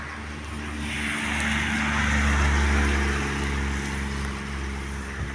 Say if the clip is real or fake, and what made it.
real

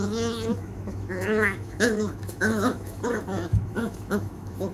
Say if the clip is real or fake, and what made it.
fake, autoencoder, DAC-VAE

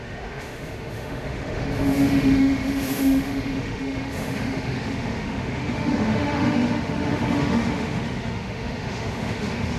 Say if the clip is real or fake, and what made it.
fake, autoencoder, DAC-VAE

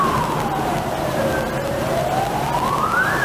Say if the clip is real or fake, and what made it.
real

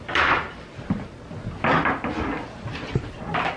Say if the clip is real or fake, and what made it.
real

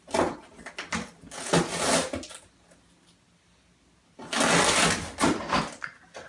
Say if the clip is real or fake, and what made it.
real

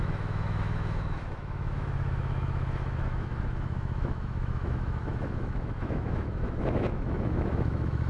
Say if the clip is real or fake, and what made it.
fake, autoencoder, DAC-VAE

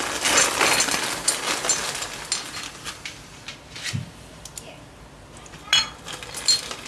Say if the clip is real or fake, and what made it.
real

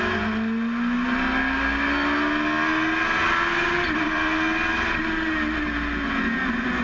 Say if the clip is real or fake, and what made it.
real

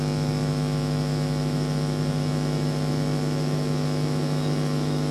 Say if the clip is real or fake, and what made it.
fake, autoencoder, DAC-VAE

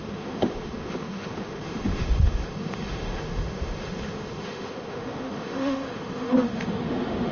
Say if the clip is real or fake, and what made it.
fake, autoencoder, DAC-VAE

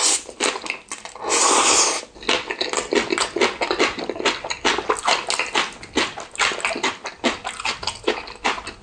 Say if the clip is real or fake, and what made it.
real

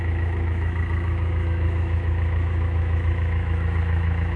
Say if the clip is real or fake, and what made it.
fake, autoencoder, DAC-VAE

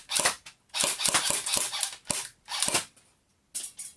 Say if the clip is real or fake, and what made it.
real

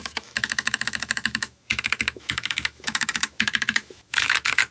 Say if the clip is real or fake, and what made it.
fake, autoencoder, DAC-VAE